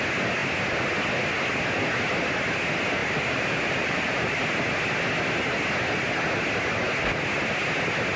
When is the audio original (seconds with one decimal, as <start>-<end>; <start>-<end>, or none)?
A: 0.0-3.0; 4.4-8.2